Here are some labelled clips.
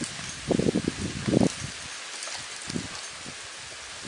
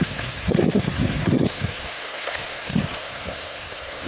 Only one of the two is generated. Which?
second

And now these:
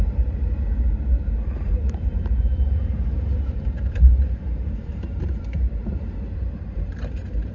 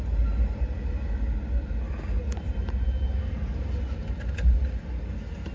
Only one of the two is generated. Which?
first